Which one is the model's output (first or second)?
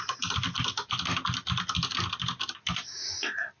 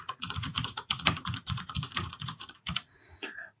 second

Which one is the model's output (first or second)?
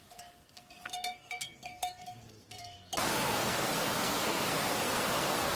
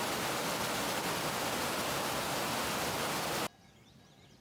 first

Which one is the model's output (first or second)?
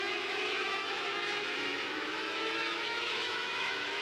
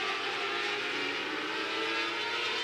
first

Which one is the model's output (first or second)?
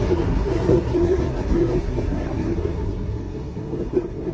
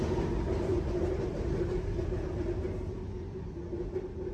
first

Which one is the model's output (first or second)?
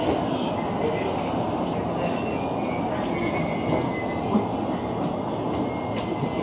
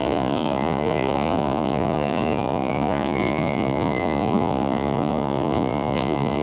second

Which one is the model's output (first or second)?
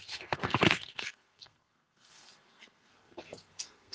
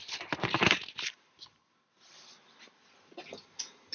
first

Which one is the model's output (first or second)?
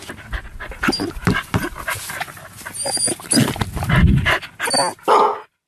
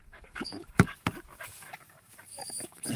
second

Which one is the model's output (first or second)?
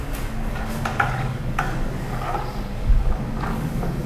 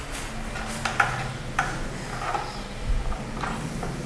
first